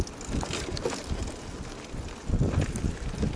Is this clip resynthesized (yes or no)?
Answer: no